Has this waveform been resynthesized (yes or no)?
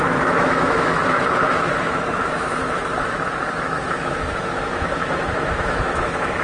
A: yes